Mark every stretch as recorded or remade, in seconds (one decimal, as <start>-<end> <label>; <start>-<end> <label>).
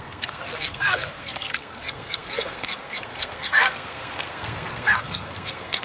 0.0-5.8 remade